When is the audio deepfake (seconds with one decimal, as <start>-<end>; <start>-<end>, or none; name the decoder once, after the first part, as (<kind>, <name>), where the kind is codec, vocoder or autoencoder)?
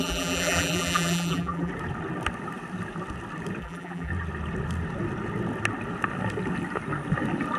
0.0-1.7 (vocoder, BigVGAN v2); 3.6-4.1